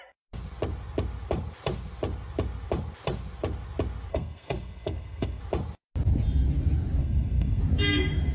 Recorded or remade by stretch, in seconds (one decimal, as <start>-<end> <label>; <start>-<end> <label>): 0.0-4.1 recorded; 4.1-5.4 remade; 5.4-7.0 recorded; 7.0-7.6 remade; 7.6-8.3 recorded